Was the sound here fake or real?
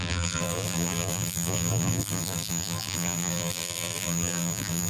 fake